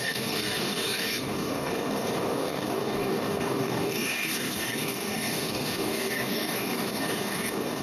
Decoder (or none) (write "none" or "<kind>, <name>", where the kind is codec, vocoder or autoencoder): codec, DAC